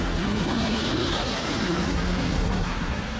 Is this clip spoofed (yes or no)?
yes